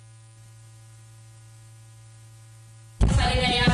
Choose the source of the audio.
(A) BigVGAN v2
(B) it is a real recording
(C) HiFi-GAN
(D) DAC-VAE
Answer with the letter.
B